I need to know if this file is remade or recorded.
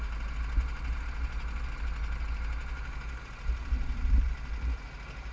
recorded